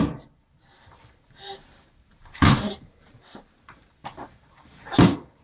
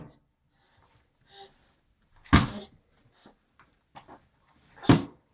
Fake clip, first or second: first